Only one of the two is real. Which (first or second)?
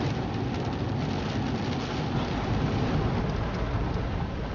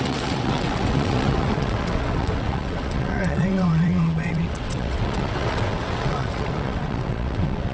first